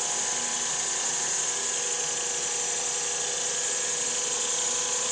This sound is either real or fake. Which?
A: real